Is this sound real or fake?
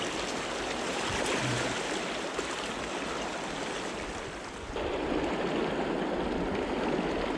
real